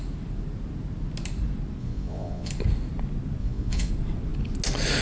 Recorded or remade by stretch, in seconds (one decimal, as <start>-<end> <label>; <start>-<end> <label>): 0.0-1.8 recorded; 1.8-2.5 remade; 2.5-3.4 recorded; 3.4-3.9 remade; 3.9-5.0 recorded